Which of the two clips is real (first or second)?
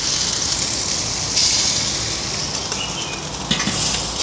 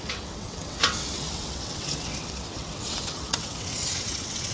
first